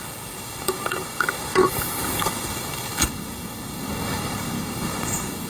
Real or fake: fake